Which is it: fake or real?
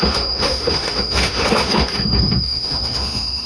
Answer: fake